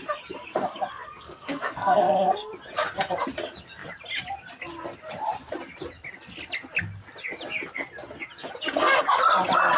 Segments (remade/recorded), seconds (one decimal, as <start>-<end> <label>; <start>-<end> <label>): 0.0-0.9 recorded; 0.9-2.5 remade; 2.5-9.8 recorded